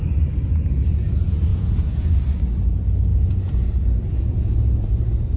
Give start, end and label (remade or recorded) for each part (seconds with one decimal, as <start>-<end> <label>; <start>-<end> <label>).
0.0-1.5 recorded; 1.5-2.2 remade; 2.2-3.1 recorded; 3.1-5.0 remade; 5.0-5.4 recorded